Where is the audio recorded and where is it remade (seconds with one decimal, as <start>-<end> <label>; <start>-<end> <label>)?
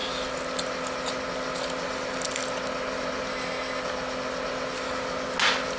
0.0-3.3 recorded; 3.3-3.8 remade; 3.8-5.8 recorded